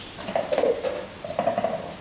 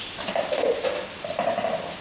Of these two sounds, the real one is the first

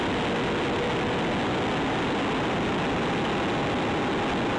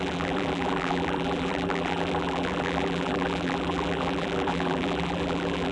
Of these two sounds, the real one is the first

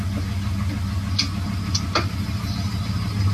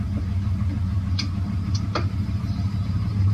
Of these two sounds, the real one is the first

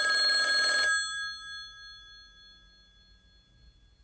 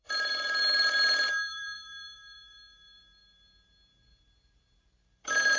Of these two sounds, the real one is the first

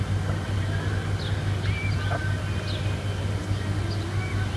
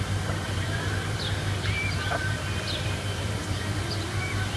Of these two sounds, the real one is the first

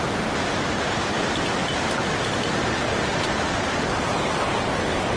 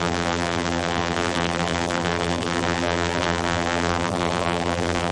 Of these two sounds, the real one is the first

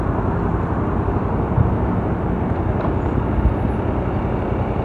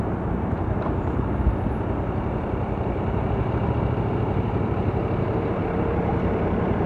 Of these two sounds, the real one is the first